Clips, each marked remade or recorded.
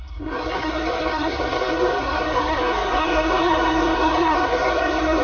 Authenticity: remade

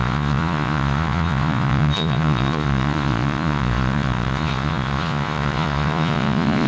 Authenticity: remade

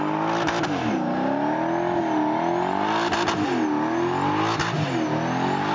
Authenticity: recorded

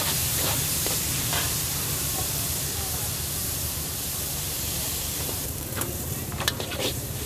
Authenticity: remade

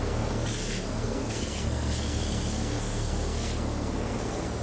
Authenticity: remade